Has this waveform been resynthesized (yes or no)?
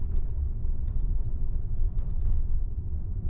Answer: yes